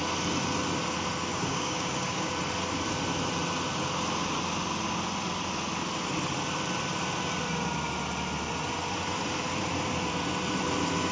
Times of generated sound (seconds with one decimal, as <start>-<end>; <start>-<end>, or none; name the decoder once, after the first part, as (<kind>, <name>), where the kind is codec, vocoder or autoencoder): 1.3-2.3 (codec, DAC)